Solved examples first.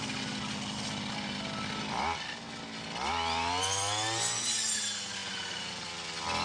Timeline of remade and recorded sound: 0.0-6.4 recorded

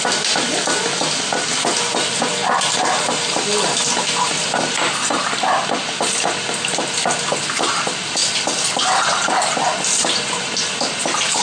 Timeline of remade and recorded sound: 0.0-11.4 recorded

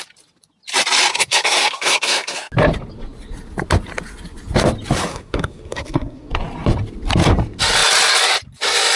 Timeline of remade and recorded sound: 0.0-1.1 recorded; 1.1-2.5 remade; 2.5-5.1 recorded; 5.1-6.3 remade; 6.3-9.0 recorded

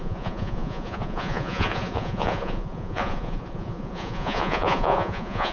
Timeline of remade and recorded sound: 0.0-5.5 remade

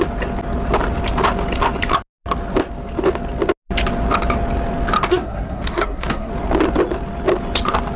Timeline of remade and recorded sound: 0.0-5.1 recorded; 5.1-6.3 remade; 6.3-8.0 recorded

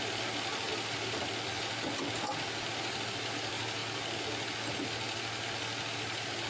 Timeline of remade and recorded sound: 0.0-6.5 recorded

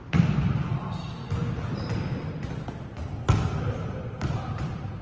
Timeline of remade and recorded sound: 0.0-0.8 remade; 0.8-3.8 recorded; 3.8-5.0 remade

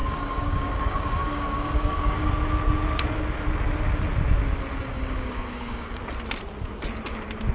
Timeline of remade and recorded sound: 0.0-2.3 remade; 2.3-4.9 recorded; 4.9-6.0 remade; 6.0-7.5 recorded